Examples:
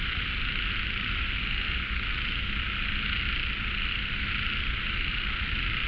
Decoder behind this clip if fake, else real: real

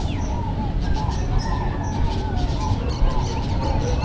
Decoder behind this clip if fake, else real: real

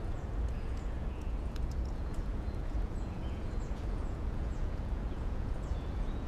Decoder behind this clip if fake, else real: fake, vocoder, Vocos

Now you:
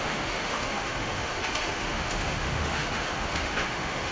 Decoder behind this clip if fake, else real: fake, autoencoder, DAC-VAE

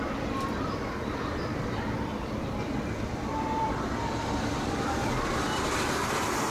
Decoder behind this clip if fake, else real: fake, vocoder, BigVGAN v2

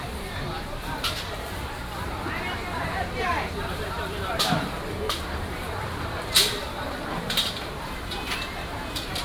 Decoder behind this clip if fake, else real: fake, vocoder, BigVGAN v2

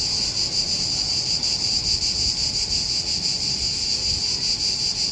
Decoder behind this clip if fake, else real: real